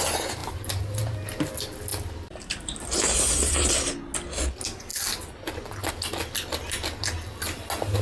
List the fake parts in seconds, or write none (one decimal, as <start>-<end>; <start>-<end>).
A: 0.4-1.5; 1.9-3.5